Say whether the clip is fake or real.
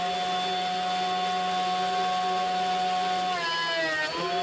real